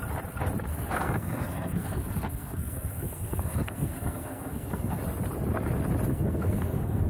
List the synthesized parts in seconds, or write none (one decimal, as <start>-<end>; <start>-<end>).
0.7-5.0; 6.1-7.1